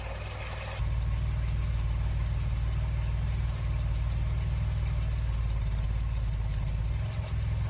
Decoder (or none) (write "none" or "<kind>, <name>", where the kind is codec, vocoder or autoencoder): none